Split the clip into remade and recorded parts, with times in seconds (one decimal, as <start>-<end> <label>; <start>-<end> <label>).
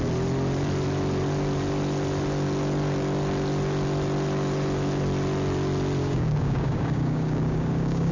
0.0-6.0 recorded; 6.0-8.1 remade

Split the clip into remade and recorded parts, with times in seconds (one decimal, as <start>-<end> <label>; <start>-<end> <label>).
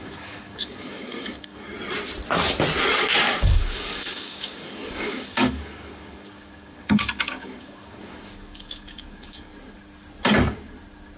0.0-1.7 remade; 1.7-3.4 recorded; 3.4-9.5 remade; 9.5-11.2 recorded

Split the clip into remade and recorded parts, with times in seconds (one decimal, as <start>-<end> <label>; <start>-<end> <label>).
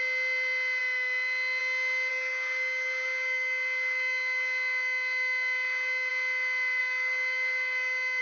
0.0-2.1 recorded; 2.1-6.1 remade; 6.1-6.8 recorded; 6.8-8.2 remade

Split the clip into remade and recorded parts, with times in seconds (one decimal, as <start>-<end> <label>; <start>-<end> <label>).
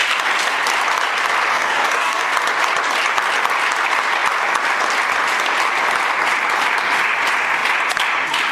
0.0-1.5 recorded; 1.5-2.3 remade; 2.3-8.5 recorded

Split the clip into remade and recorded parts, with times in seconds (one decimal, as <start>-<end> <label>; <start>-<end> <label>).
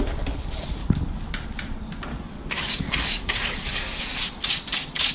0.0-0.8 recorded; 0.8-1.3 remade; 1.3-2.1 recorded; 2.1-4.0 remade; 4.0-5.1 recorded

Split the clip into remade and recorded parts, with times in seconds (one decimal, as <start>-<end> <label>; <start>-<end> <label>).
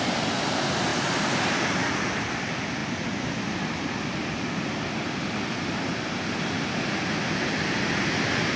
0.0-8.6 recorded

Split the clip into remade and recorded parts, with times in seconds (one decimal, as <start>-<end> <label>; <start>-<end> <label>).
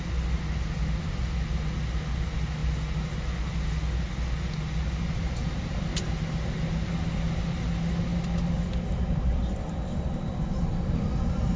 0.0-11.6 recorded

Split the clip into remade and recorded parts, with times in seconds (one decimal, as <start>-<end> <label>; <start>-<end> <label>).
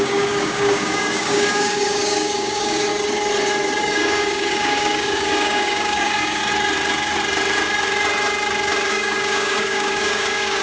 0.0-2.9 remade; 2.9-3.8 recorded; 3.8-6.4 remade; 6.4-8.9 recorded; 8.9-10.6 remade